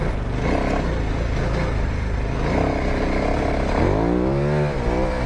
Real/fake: real